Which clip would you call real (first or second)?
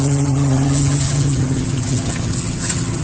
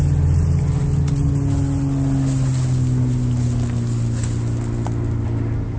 second